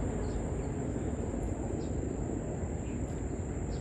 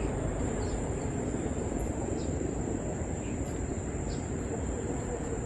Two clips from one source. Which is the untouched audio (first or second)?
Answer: first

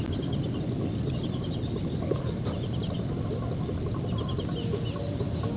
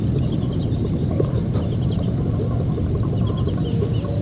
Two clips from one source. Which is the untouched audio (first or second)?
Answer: first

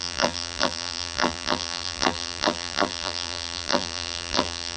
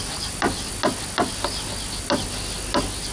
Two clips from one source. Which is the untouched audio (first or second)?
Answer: second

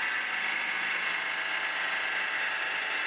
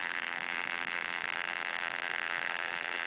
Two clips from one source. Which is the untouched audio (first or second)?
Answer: first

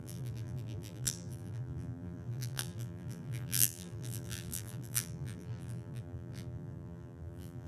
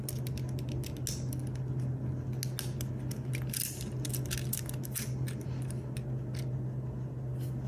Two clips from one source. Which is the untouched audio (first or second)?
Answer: second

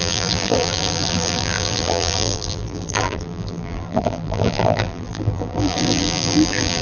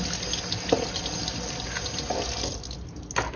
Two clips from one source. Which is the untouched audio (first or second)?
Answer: second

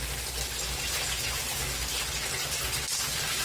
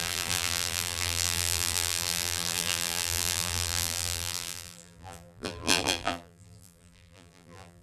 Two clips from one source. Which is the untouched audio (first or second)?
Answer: first